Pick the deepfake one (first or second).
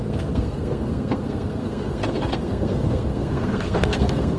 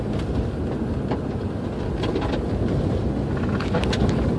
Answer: first